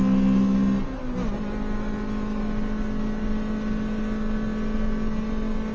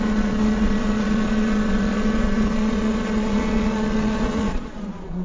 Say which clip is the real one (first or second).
first